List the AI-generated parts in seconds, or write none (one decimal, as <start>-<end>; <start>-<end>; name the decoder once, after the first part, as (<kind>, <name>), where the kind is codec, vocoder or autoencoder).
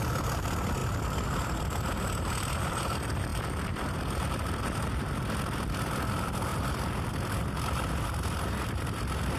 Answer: 0.0-9.4 (vocoder, BigVGAN v2)